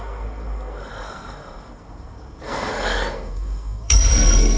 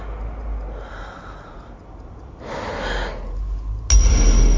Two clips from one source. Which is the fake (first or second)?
first